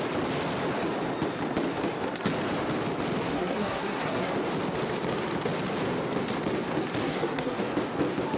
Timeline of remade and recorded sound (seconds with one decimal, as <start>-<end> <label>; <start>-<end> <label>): 0.0-3.3 recorded; 3.3-4.3 remade; 4.3-7.0 recorded; 7.0-7.6 remade; 7.6-8.4 recorded